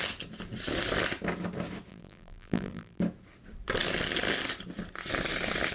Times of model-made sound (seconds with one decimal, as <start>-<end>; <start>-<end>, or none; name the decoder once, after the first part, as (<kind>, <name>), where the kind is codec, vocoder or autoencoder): 1.9-3.0 (vocoder, BigVGAN v2)